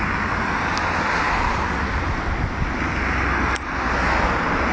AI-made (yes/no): no